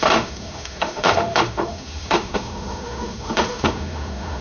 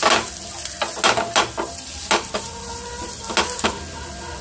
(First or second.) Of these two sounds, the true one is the second